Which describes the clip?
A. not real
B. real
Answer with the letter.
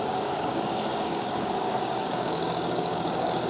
A